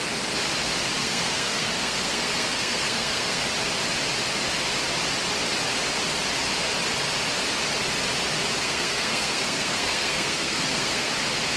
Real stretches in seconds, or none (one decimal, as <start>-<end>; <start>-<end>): 0.0-1.0; 3.4-8.6; 11.1-11.6